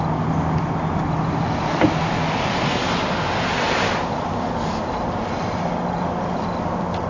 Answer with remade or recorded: recorded